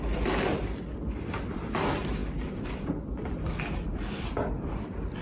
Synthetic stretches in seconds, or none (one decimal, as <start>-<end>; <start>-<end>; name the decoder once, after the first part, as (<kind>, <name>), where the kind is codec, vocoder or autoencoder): 0.0-5.2 (vocoder, BigVGAN v2)